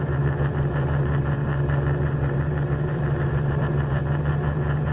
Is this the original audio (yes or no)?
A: no